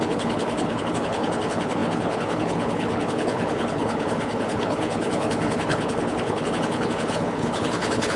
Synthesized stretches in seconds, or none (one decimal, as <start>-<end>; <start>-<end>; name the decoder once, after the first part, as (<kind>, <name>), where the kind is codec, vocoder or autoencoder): 0.0-8.2 (codec, HILCodec)